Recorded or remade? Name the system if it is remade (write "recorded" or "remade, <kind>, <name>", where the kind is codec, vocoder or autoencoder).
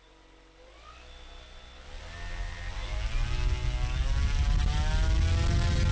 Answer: recorded